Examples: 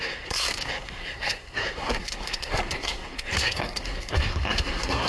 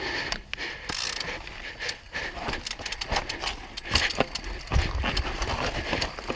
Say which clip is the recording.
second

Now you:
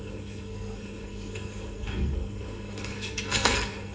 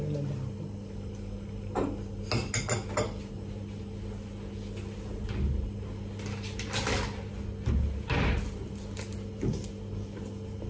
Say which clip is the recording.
second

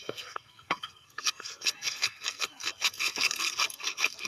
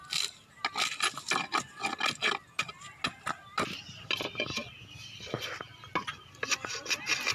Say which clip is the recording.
second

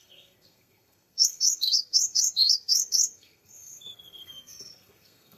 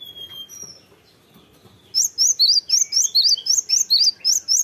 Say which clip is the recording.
second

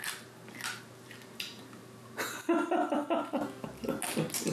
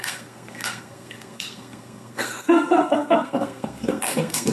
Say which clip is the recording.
first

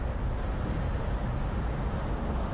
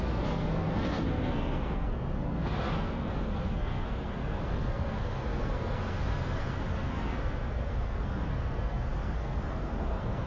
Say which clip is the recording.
first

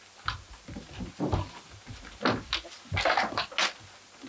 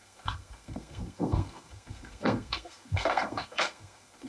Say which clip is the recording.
first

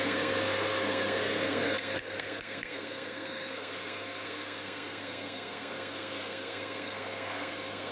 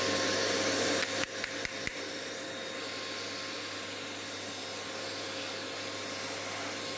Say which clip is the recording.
second